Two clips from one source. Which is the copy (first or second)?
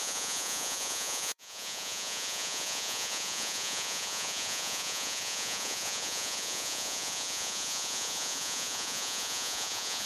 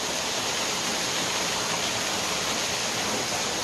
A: first